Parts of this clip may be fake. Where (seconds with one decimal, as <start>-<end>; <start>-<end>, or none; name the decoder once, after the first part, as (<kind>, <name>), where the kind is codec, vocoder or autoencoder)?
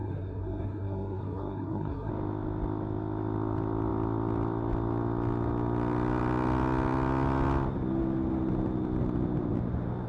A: 0.0-2.1 (codec, SNAC)